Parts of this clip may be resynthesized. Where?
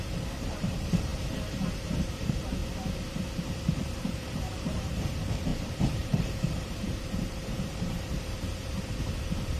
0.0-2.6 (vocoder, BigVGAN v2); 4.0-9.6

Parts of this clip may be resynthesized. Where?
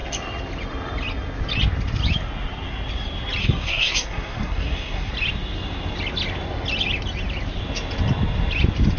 3.4-5.1 (codec, SNAC)